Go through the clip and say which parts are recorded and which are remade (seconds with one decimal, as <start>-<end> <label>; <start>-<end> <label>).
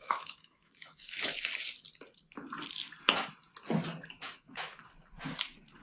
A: 0.0-1.5 remade; 1.5-4.1 recorded; 4.1-4.8 remade; 4.8-5.8 recorded